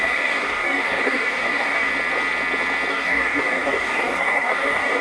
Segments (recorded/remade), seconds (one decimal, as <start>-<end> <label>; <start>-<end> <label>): 0.0-1.9 remade; 1.9-2.9 recorded; 2.9-5.0 remade